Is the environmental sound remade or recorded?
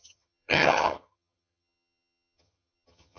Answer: remade